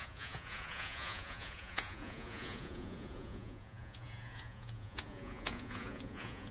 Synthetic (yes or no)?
yes